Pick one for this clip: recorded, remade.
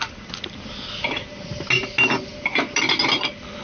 recorded